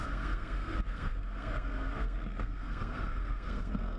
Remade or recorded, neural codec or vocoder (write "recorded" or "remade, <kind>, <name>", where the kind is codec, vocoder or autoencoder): remade, codec, SNAC